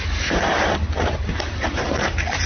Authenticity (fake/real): real